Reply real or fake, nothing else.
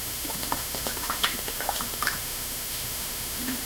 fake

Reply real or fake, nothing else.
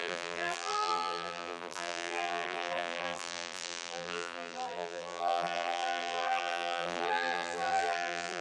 fake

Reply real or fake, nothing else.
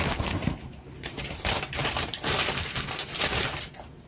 fake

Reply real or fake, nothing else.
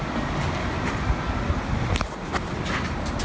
real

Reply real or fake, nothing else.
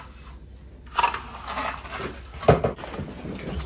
real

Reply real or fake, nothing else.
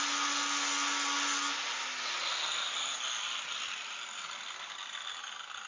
real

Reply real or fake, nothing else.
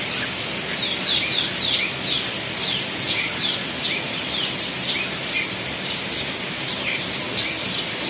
real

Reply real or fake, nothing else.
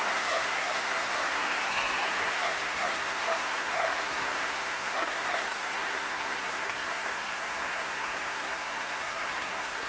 fake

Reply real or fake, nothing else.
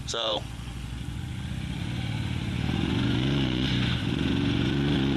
fake